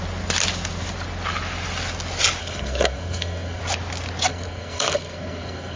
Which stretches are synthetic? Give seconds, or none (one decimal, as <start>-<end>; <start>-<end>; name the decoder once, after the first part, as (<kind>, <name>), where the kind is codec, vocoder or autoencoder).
2.4-3.6 (codec, SNAC); 4.3-5.8